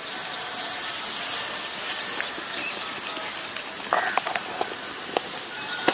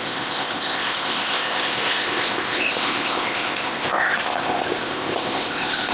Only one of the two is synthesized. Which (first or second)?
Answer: second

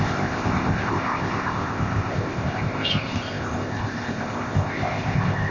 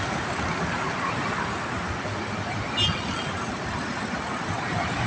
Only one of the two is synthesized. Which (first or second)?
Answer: first